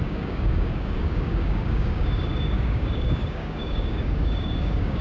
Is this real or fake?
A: fake